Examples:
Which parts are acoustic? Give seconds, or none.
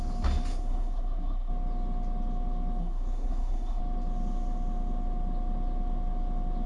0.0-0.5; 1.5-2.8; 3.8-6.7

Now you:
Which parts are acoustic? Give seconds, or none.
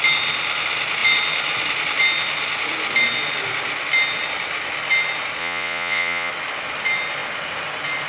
0.0-5.4; 6.3-8.1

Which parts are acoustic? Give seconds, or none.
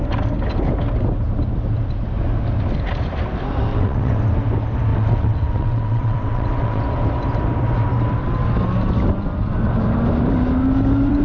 0.0-3.7; 4.2-4.9; 6.8-11.2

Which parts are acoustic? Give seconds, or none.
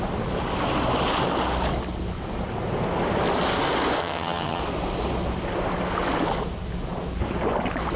0.0-4.0; 4.6-8.0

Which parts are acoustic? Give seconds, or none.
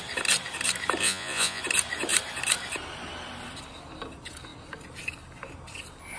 0.0-1.0; 1.6-6.2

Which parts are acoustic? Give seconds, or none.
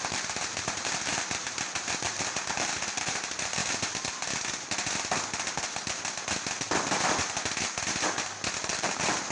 3.6-8.6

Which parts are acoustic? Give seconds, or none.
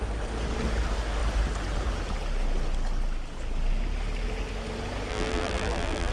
0.0-5.1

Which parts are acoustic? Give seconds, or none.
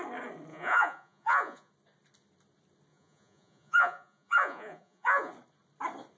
0.0-0.5; 1.7-2.9; 5.3-6.2